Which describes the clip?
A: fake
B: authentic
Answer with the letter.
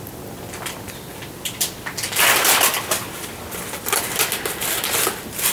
B